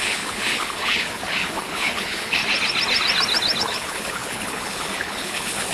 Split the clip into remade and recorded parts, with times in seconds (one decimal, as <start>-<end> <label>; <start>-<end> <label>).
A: 0.0-2.4 remade; 2.4-3.6 recorded; 3.6-5.7 remade